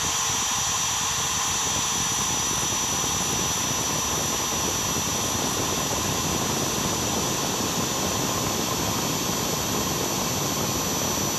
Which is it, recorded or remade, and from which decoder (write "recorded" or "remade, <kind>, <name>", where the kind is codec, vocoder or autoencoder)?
recorded